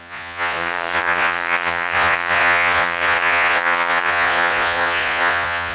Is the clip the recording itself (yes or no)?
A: no